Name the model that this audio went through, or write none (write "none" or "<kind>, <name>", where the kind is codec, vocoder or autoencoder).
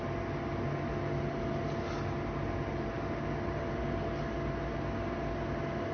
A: none